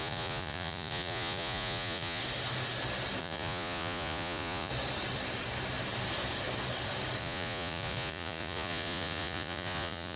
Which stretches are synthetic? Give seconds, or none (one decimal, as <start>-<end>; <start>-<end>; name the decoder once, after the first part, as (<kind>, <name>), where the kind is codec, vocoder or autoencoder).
0.0-2.2 (vocoder, Vocos); 3.2-4.7; 7.2-10.2